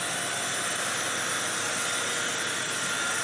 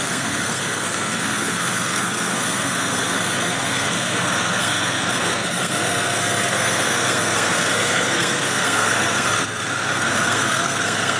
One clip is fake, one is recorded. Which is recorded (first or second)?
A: first